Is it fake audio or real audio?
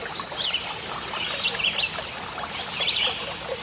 real